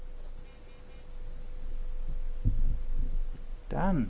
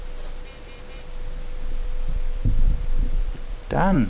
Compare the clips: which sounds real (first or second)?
first